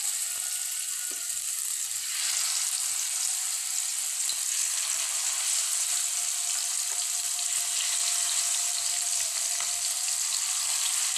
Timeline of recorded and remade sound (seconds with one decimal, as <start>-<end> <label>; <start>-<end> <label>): 0.0-11.2 recorded